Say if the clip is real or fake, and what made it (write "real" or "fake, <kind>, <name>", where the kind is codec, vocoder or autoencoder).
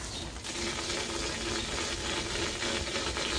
real